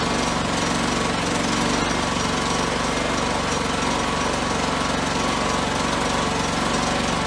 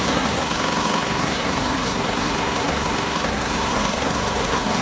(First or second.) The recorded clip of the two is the first